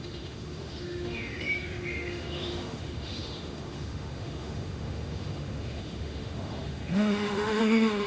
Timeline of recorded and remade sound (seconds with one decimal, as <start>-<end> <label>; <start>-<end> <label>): 0.0-8.1 remade